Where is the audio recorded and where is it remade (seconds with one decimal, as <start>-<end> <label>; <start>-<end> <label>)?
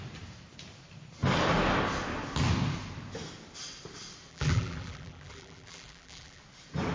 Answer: 0.0-4.3 recorded; 4.3-6.4 remade; 6.4-6.9 recorded